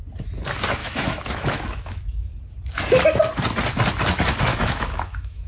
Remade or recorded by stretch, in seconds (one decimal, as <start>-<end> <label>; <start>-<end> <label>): 0.0-0.8 recorded; 0.8-2.3 remade; 2.3-4.5 recorded; 4.5-5.5 remade